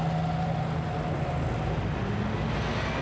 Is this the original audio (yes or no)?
yes